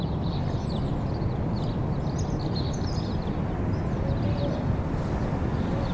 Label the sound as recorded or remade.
recorded